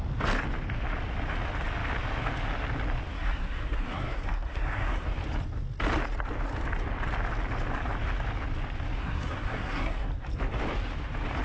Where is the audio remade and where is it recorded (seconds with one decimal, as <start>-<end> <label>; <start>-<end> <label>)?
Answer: 0.0-3.1 recorded; 3.1-5.1 remade; 5.1-9.0 recorded; 9.0-10.1 remade; 10.1-11.4 recorded